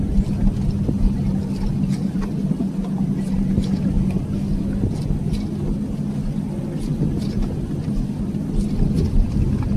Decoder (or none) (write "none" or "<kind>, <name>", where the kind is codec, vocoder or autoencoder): none